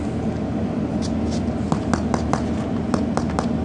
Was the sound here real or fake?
real